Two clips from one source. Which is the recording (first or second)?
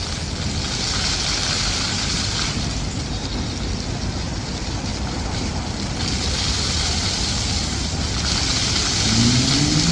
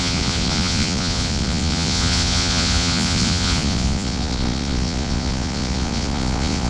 first